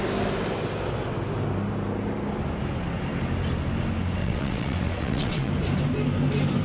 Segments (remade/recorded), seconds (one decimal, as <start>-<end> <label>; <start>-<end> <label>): 0.0-4.2 recorded; 4.2-5.5 remade; 5.5-6.6 recorded